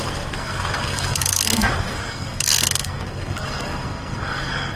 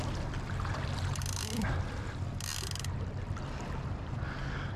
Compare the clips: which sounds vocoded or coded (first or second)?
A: first